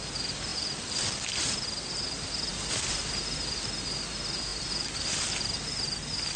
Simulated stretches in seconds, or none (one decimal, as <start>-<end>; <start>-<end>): 0.5-1.9